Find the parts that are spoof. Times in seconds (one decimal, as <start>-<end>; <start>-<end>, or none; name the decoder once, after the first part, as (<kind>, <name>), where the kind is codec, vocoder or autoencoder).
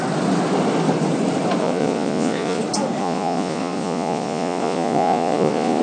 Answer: 1.6-2.6 (vocoder, Vocos); 3.0-5.8